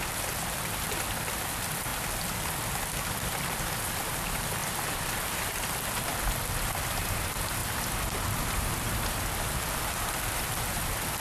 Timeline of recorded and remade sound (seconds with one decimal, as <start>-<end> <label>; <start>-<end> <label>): 0.0-4.6 remade; 4.6-6.8 recorded; 6.8-7.6 remade; 7.6-8.6 recorded; 8.6-11.2 remade